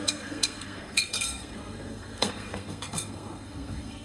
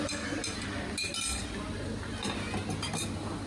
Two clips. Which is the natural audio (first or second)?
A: second